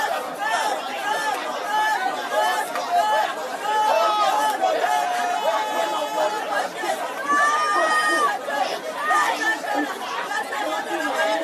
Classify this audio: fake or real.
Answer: real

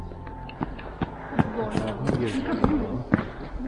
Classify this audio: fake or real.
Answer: real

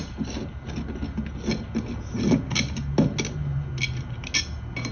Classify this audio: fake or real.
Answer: real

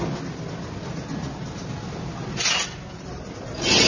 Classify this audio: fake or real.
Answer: real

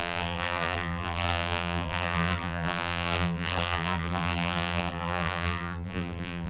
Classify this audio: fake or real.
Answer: fake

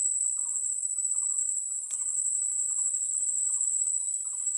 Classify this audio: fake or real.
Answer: real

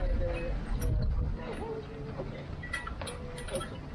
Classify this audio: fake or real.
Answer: real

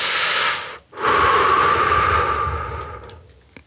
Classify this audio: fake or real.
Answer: real